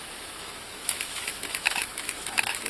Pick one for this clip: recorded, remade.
remade